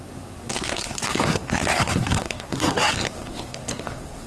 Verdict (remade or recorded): remade